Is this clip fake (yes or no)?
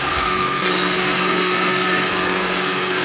yes